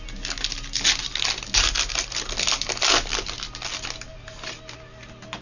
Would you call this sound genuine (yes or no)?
yes